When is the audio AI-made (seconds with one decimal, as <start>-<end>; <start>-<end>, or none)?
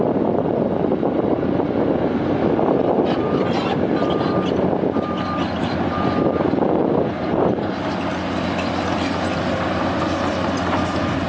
9.3-9.8